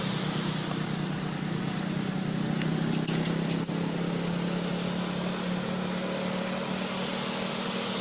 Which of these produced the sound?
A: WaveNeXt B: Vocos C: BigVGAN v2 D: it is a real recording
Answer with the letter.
D